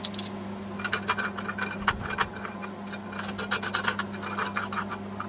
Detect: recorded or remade recorded